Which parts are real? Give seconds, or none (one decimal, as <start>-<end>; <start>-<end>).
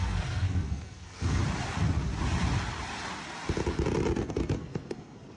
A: 1.4-4.2